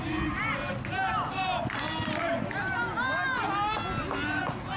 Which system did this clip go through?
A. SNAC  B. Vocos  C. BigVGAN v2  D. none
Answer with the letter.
D